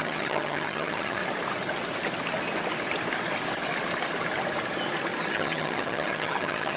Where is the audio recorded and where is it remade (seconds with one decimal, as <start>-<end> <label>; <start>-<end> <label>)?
0.0-1.2 remade; 1.2-5.3 recorded; 5.3-6.8 remade